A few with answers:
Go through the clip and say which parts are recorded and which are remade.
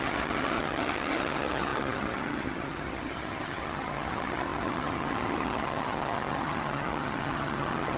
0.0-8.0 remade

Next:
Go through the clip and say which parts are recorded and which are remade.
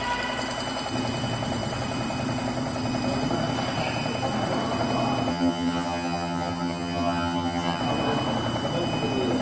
0.0-5.3 recorded; 5.3-7.8 remade; 7.8-9.4 recorded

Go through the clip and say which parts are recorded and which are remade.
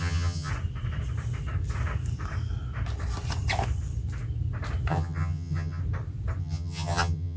0.0-0.5 remade; 0.5-4.9 recorded; 4.9-5.8 remade; 5.8-6.4 recorded; 6.4-7.4 remade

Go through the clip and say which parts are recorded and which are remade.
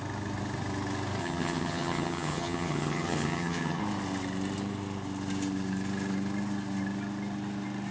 0.0-1.2 recorded; 1.2-3.8 remade; 3.8-7.9 recorded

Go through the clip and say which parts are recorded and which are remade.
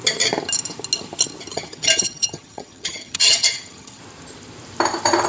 0.0-1.5 recorded; 1.5-4.0 remade; 4.0-5.3 recorded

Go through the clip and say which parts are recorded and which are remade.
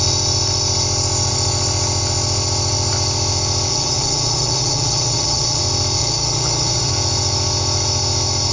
0.0-3.7 recorded; 3.7-5.6 remade; 5.6-6.0 recorded; 6.0-6.9 remade; 6.9-8.5 recorded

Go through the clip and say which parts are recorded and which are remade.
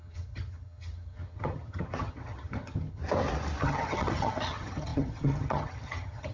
0.0-3.0 remade; 3.0-3.6 recorded; 3.6-6.3 remade